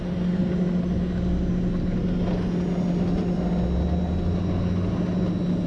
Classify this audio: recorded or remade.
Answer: recorded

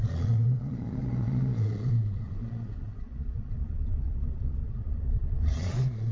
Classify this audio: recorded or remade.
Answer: remade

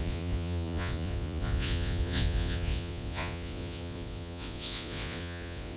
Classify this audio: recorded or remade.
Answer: remade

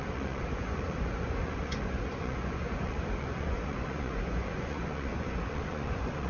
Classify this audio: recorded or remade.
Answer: remade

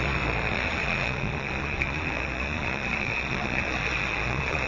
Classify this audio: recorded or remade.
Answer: remade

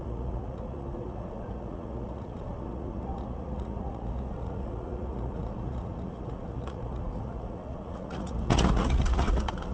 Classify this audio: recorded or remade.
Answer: remade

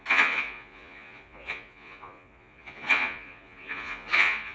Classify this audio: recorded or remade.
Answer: remade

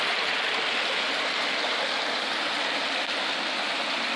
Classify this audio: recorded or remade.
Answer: recorded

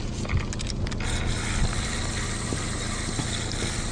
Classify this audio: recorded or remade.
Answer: recorded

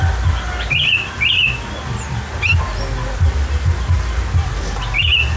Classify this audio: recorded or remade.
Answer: recorded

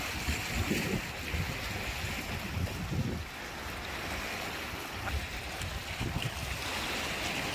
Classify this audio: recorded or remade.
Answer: recorded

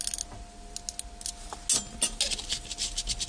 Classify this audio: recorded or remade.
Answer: recorded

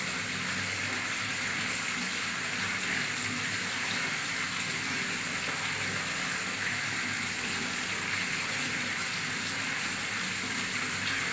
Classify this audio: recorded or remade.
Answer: recorded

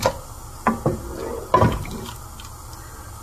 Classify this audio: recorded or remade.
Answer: recorded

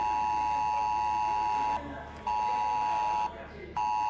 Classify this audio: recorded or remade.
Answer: recorded